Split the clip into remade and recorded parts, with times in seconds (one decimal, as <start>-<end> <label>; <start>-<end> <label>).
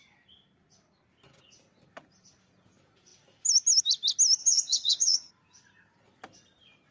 0.0-4.4 recorded; 4.4-5.3 remade; 5.3-6.9 recorded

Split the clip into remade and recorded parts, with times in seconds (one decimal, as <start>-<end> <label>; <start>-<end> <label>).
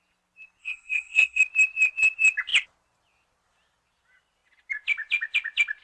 0.0-0.6 recorded; 0.6-1.4 remade; 1.4-5.8 recorded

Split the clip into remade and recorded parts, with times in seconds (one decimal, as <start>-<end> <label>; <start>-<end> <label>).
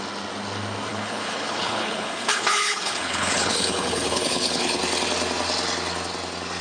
0.0-0.9 recorded; 0.9-4.8 remade; 4.8-6.6 recorded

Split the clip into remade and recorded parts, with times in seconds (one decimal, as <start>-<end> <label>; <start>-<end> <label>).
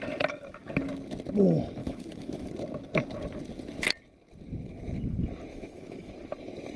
0.0-1.8 recorded; 1.8-2.5 remade; 2.5-5.5 recorded; 5.5-6.1 remade; 6.1-6.8 recorded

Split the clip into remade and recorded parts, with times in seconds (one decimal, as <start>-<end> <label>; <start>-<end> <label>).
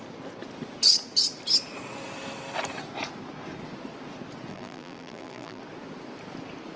0.0-4.5 recorded; 4.5-5.6 remade; 5.6-6.8 recorded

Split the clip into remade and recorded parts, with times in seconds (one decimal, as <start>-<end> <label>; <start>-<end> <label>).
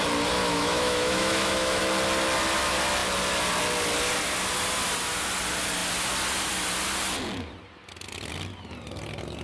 0.0-0.4 recorded; 0.4-1.8 remade; 1.8-9.4 recorded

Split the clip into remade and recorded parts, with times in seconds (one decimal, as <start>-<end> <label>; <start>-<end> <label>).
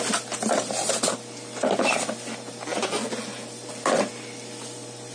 0.0-5.1 recorded